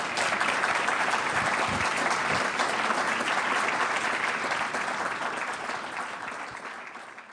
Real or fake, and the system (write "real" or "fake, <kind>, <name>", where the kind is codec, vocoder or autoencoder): real